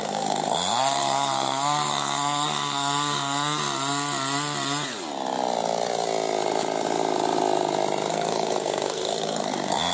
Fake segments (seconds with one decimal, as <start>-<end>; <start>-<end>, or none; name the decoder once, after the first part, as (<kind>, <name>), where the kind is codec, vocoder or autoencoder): 0.0-3.6 (codec, SNAC); 8.1-9.9